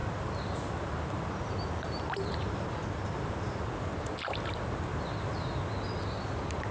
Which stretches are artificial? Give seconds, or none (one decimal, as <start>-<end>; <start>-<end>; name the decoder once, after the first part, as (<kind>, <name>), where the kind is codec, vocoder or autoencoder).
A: none